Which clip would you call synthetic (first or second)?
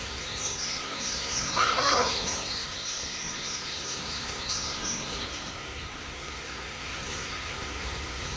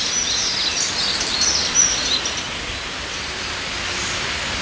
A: first